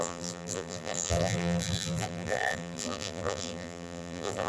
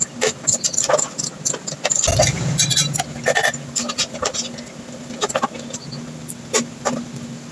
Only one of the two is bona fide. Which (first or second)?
second